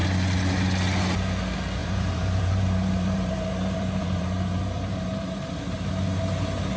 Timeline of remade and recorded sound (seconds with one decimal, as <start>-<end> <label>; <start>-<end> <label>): 0.0-1.8 recorded; 1.8-5.9 remade; 5.9-6.8 recorded